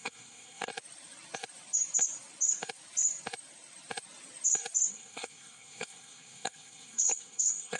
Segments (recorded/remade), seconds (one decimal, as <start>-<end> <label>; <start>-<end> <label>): 0.0-0.7 remade; 0.7-4.9 recorded; 4.9-7.8 remade

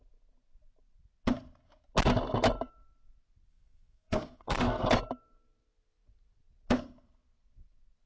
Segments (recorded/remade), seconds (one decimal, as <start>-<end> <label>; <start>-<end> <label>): 0.0-3.5 recorded; 3.5-4.9 remade; 4.9-8.1 recorded

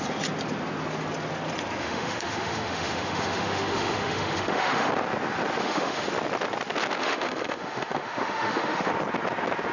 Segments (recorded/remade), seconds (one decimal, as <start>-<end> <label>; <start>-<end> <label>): 0.0-1.8 recorded; 1.8-4.9 remade; 4.9-5.6 recorded; 5.6-6.1 remade; 6.1-7.0 recorded; 7.0-8.9 remade; 8.9-9.7 recorded

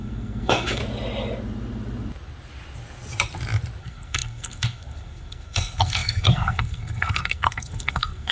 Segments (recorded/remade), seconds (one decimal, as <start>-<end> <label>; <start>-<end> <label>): 0.0-0.8 remade; 0.8-3.8 recorded; 3.8-8.3 remade